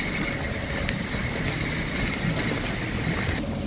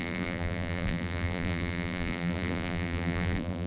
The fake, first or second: second